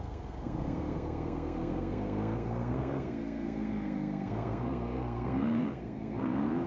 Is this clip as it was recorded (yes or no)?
no